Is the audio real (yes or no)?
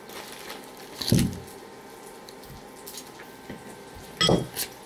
yes